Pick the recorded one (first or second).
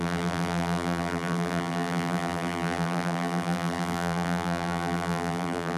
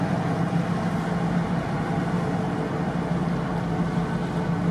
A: second